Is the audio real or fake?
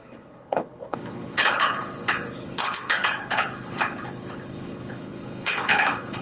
fake